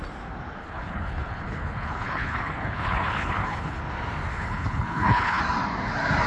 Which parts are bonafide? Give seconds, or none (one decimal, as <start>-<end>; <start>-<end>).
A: 0.0-0.6; 3.8-4.3; 5.4-6.3